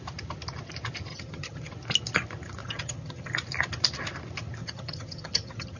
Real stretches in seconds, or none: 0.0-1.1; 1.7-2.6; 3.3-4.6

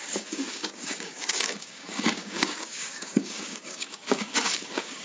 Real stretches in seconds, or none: none

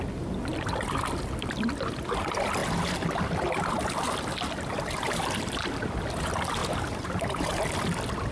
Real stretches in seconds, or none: 0.0-6.6; 7.2-8.3

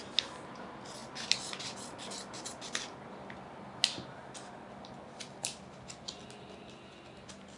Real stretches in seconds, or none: 0.0-7.6

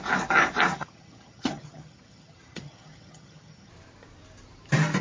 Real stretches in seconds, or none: 0.0-0.7; 3.7-5.0